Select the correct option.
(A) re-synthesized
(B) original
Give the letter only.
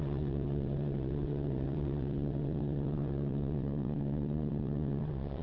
A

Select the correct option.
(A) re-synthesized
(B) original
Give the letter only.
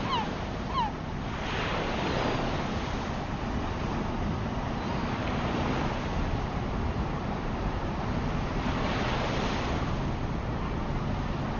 B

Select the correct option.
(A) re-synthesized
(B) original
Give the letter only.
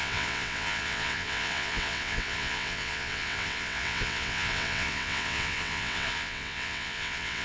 A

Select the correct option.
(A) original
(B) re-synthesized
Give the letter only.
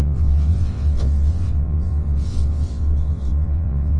B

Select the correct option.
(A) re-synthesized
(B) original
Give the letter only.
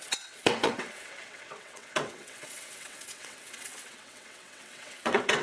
A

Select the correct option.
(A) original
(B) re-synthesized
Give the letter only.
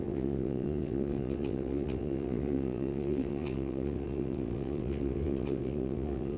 B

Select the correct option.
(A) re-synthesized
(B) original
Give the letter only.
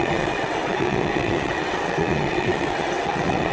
A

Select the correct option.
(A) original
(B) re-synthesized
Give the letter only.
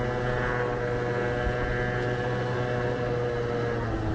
A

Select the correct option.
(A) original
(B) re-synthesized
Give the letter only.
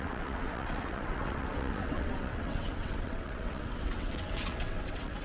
B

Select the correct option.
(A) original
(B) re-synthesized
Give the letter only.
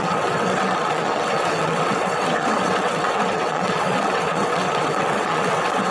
B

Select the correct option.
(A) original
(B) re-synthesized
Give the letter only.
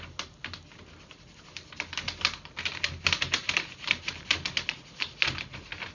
A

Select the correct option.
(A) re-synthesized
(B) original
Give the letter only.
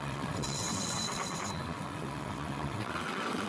A